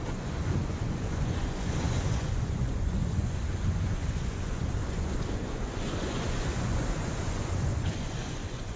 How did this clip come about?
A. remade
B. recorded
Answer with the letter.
A